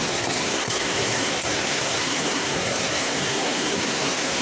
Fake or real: fake